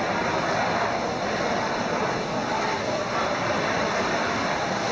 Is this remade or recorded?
recorded